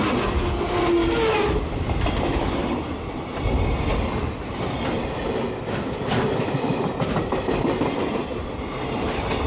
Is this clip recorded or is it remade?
recorded